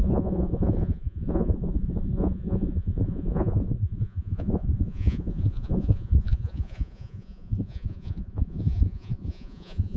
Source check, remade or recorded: remade